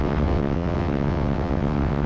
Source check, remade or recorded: remade